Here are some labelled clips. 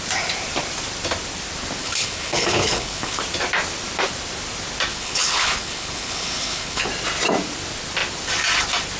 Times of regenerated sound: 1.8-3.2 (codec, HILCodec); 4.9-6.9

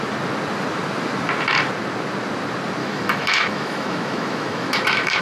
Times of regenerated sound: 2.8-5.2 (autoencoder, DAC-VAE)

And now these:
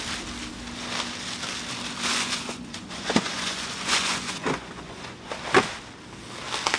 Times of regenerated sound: 2.1-5.3 (vocoder, Vocos)

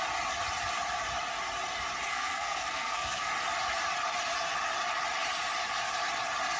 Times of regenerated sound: 2.1-3.3 (codec, SNAC)

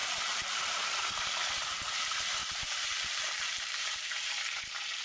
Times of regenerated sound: 0.0-1.5 (vocoder, BigVGAN v2); 2.4-4.3

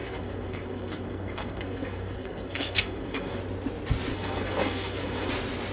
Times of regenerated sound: 0.0-3.4 (codec, SNAC); 4.1-5.3

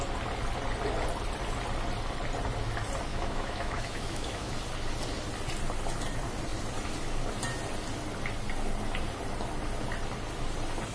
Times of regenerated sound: 3.1-4.5 (autoencoder, DAC-VAE)